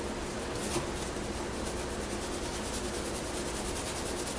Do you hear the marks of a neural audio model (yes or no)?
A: no